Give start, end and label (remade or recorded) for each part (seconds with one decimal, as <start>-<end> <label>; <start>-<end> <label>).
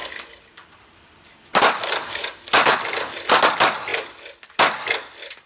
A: 0.0-5.5 recorded